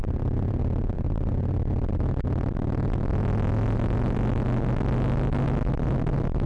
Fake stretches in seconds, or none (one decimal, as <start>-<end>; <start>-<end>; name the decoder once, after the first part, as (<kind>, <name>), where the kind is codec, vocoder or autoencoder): 0.0-0.6 (vocoder, BigVGAN v2)